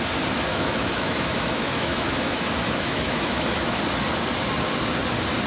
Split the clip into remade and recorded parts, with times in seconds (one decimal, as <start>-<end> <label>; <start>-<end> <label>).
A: 0.0-0.5 recorded; 0.5-3.8 remade; 3.8-5.5 recorded